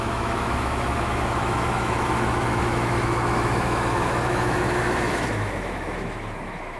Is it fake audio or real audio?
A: fake